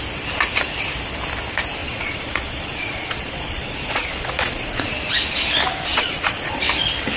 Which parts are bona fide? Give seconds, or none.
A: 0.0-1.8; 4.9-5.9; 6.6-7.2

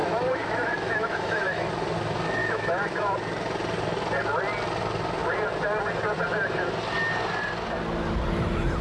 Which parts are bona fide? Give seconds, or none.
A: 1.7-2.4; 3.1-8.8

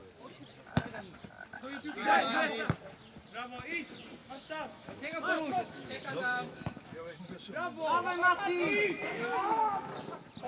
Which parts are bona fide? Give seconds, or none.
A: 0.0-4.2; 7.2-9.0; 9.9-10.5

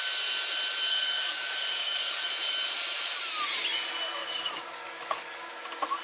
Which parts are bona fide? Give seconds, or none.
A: 0.0-0.9; 2.3-4.2; 5.5-6.0